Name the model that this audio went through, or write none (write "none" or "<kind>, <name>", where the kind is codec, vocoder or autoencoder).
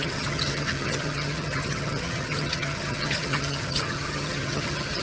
vocoder, HiFi-GAN